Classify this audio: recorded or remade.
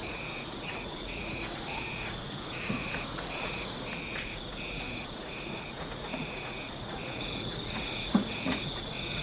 remade